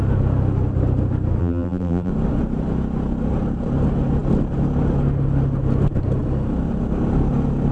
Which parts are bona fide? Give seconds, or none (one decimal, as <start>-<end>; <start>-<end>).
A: 0.0-1.4; 2.1-7.7